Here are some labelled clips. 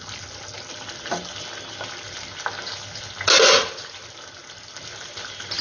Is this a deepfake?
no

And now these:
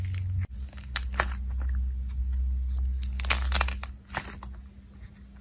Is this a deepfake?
no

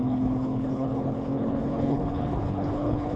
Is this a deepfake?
yes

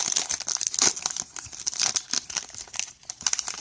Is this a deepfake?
no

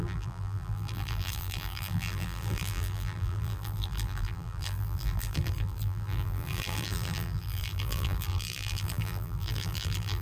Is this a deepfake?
yes